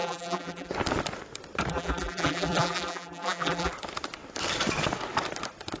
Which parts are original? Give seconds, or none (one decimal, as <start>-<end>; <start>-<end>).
0.7-1.7; 3.7-5.8